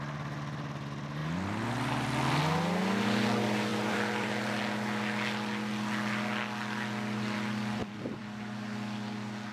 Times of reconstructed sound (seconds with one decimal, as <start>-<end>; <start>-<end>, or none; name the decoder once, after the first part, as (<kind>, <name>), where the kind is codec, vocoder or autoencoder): 1.2-2.4 (vocoder, BigVGAN v2); 3.7-4.3; 7.8-8.4